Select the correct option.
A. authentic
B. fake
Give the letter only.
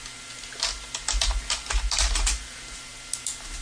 A